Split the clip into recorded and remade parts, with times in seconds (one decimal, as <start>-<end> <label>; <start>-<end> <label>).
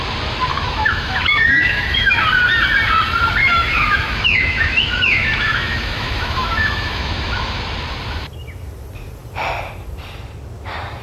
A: 0.0-0.5 recorded; 0.5-2.2 remade; 2.2-3.4 recorded; 3.4-7.6 remade; 7.6-11.0 recorded